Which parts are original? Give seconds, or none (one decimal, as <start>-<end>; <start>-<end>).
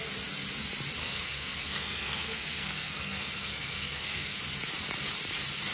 0.0-1.0; 4.4-5.7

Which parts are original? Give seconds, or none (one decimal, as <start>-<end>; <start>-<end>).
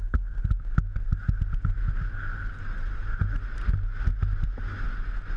0.0-5.4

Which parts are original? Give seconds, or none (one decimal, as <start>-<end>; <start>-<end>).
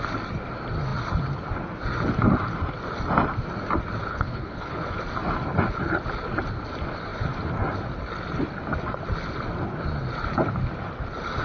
0.0-4.1; 4.7-11.4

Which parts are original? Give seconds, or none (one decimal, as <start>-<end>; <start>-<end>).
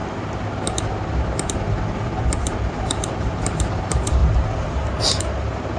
0.0-2.7; 4.2-5.2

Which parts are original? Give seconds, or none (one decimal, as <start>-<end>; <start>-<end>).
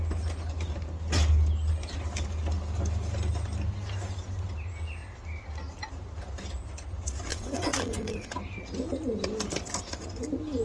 0.0-7.3; 8.3-10.6